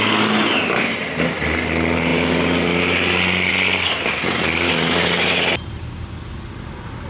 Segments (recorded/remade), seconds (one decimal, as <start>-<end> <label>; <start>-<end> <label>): 0.0-7.1 recorded